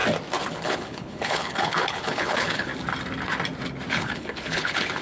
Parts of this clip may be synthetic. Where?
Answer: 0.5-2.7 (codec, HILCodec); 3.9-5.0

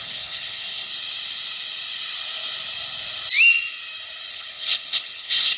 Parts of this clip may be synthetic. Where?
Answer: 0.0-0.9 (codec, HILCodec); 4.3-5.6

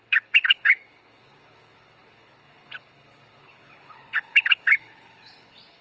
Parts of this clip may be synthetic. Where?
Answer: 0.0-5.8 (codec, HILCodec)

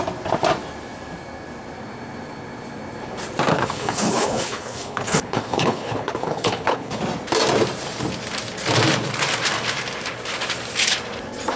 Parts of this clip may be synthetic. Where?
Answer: 3.5-7.0 (codec, HILCodec)